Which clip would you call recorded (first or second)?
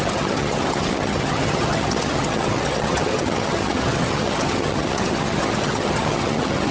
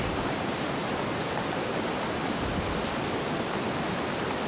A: second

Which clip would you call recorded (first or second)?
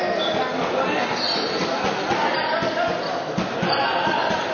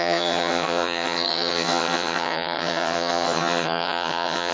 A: first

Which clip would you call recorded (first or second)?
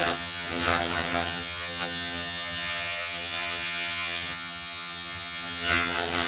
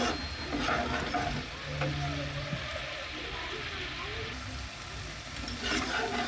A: second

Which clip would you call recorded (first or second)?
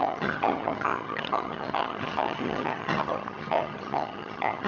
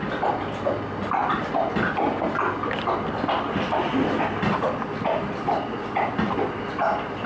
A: second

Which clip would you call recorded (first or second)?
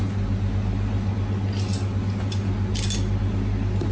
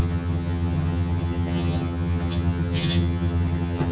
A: first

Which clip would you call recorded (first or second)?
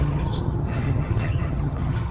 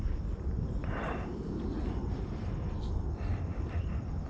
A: second